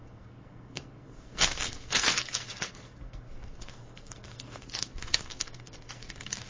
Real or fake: fake